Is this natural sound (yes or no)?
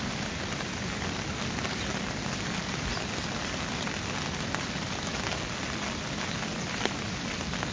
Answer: yes